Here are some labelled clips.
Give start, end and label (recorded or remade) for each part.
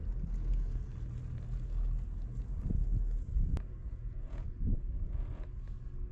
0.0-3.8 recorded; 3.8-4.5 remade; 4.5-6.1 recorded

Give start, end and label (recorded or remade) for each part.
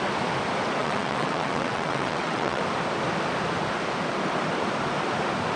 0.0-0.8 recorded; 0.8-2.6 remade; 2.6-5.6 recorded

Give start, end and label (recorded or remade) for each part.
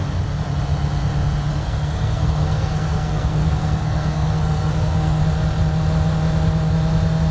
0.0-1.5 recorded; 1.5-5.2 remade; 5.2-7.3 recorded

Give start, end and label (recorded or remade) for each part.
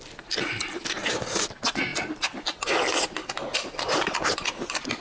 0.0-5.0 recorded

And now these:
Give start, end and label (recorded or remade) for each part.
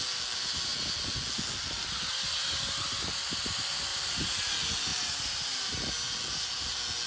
0.0-3.9 recorded; 3.9-4.5 remade; 4.5-4.9 recorded; 4.9-5.9 remade; 5.9-7.1 recorded